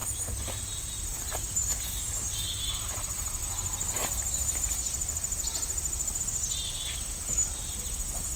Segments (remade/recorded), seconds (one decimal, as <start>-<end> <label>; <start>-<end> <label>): 0.0-1.5 remade; 1.5-3.4 recorded; 3.4-6.2 remade; 6.2-8.4 recorded